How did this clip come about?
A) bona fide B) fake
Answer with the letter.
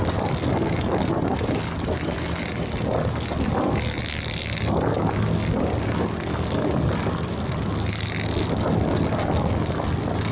A